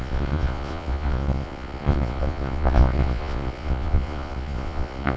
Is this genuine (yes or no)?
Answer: no